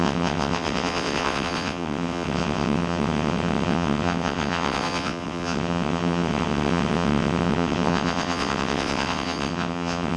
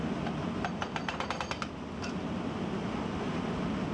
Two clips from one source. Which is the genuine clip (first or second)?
second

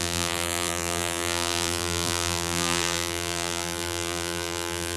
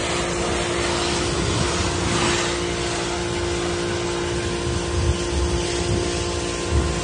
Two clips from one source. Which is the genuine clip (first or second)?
second